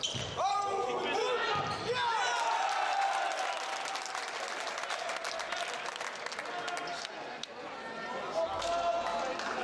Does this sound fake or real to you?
real